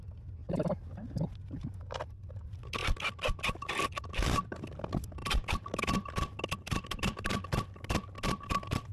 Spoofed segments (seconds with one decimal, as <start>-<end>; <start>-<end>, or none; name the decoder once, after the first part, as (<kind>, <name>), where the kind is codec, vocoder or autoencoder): none